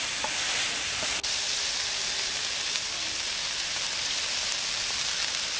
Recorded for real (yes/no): yes